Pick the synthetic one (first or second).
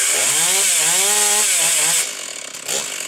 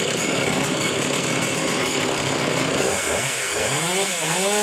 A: second